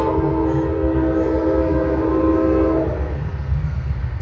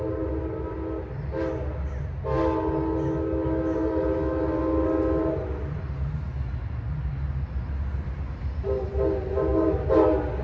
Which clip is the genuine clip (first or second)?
second